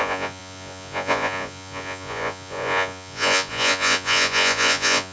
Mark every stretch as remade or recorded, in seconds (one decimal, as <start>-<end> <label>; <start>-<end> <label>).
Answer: 0.0-5.1 remade